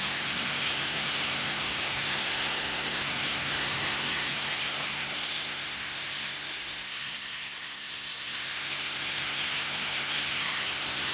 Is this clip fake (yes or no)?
yes